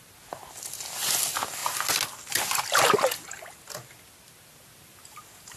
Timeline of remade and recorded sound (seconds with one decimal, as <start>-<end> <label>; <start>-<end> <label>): 0.0-5.6 recorded

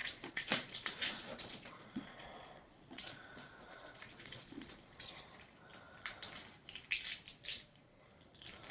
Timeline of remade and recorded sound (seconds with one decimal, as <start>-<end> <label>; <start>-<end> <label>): 0.0-5.1 remade; 5.1-7.5 recorded; 7.5-8.0 remade; 8.0-8.7 recorded

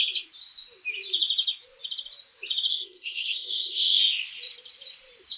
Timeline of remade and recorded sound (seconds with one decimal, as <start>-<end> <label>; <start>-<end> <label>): 0.0-2.7 recorded; 2.7-4.0 remade; 4.0-5.4 recorded

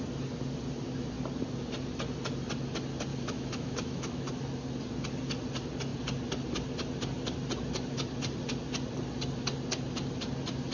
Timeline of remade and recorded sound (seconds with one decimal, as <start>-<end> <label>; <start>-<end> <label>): 0.0-3.1 recorded; 3.1-4.3 remade; 4.3-10.7 recorded